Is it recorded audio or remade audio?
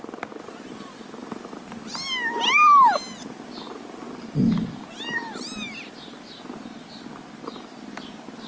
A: recorded